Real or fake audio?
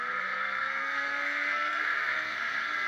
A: fake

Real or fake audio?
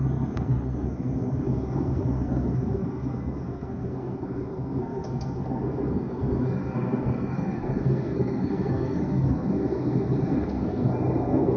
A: fake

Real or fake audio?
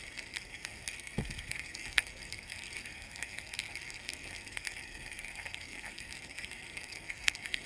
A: fake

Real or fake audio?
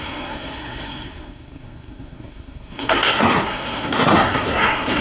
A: fake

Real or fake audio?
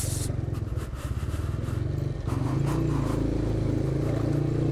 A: real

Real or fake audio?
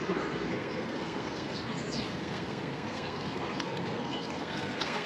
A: fake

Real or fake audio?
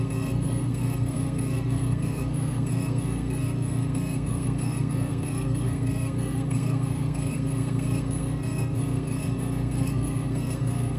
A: fake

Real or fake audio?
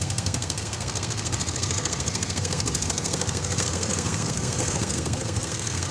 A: fake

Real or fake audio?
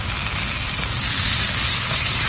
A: real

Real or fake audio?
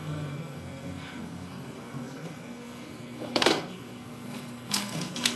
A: fake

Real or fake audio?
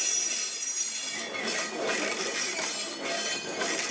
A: real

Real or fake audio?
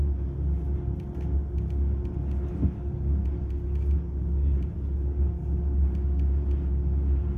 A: real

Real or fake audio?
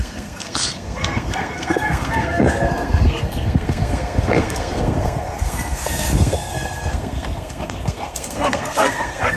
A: fake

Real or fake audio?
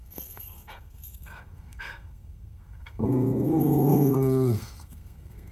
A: fake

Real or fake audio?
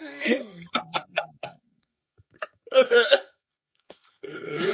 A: fake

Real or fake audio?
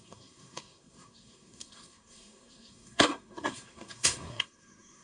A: fake